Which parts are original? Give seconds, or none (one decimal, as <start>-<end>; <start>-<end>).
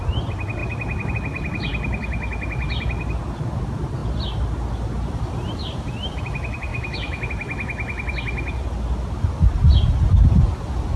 0.0-6.7; 7.3-11.0